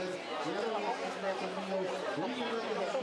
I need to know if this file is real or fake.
real